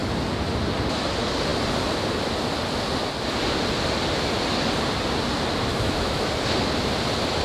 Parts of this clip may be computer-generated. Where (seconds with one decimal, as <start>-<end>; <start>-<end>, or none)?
5.7-6.3